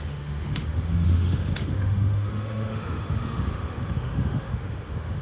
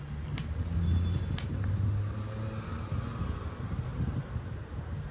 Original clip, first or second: second